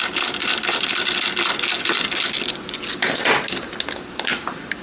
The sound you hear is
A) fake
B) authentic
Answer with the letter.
B